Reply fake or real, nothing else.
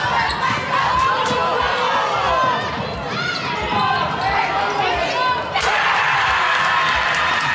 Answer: real